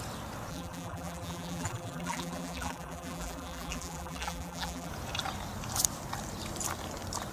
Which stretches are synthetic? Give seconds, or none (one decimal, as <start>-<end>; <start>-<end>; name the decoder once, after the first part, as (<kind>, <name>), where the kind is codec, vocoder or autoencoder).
0.5-4.9 (vocoder, BigVGAN v2)